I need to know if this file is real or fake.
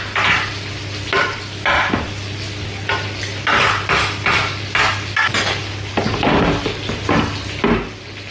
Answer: real